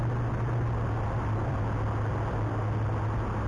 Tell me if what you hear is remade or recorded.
recorded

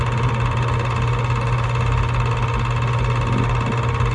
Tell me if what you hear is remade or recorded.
recorded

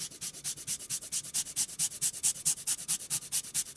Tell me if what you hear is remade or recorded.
recorded